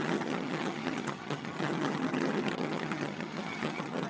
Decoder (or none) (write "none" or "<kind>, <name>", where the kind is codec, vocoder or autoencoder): vocoder, HiFi-GAN